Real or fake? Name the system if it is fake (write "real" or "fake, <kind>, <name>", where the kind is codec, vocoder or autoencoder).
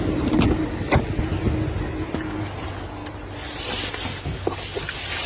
real